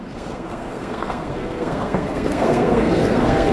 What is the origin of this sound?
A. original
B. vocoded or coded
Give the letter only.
B